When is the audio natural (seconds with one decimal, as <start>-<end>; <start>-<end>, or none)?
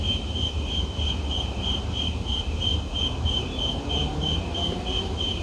none